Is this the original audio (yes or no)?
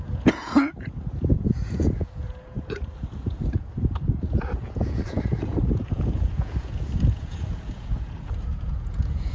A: no